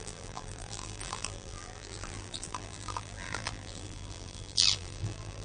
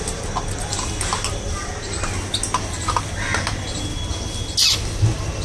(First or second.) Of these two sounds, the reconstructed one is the first